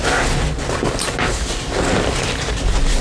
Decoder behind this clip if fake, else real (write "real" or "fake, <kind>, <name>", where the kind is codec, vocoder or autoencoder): real